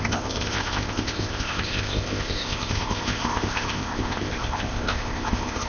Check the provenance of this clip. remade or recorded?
remade